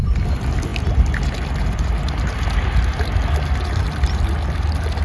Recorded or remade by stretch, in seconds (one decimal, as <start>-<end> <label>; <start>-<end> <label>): 0.0-5.0 recorded